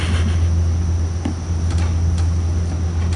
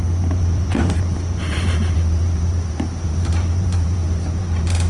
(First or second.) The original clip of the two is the first